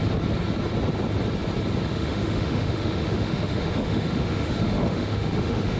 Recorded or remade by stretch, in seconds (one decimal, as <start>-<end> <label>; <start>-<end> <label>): 0.0-1.9 recorded; 1.9-5.8 remade